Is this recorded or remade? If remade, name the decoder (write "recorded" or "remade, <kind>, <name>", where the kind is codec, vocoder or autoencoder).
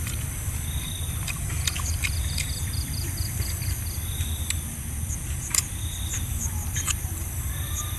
remade, vocoder, BigVGAN v2